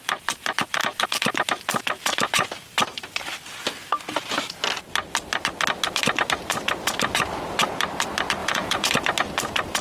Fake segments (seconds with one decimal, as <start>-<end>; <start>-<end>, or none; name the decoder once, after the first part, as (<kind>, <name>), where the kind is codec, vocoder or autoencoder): 8.4-8.9 (vocoder, Vocos)